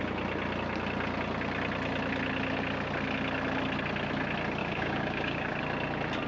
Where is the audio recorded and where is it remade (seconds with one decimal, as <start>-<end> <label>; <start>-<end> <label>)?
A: 0.0-4.6 recorded; 4.6-5.6 remade; 5.6-6.3 recorded